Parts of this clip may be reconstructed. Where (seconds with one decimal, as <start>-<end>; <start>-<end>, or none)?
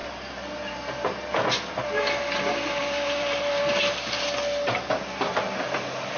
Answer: 0.0-0.8; 2.8-3.6